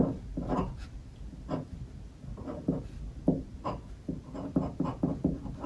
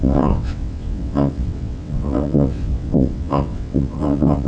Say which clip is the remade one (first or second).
second